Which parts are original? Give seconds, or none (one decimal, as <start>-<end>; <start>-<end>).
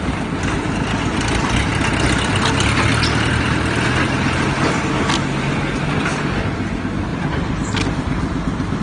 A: 0.0-7.1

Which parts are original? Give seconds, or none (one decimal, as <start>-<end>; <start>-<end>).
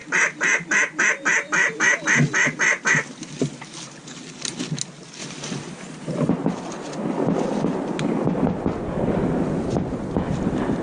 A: 4.0-5.2; 6.3-10.8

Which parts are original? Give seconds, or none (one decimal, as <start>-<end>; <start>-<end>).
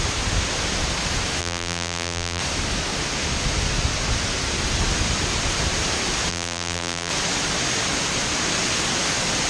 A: 0.0-1.4; 2.4-6.3; 7.1-9.5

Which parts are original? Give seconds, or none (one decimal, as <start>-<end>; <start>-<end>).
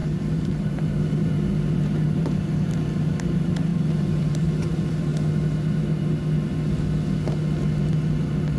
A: 5.1-7.7